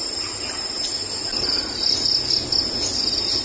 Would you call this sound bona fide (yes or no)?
yes